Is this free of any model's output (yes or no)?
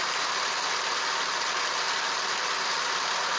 yes